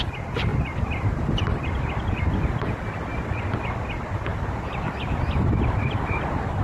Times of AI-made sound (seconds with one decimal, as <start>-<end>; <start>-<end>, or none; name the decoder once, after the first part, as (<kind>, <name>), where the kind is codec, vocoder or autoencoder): 0.0-3.1 (vocoder, BigVGAN v2); 3.6-6.6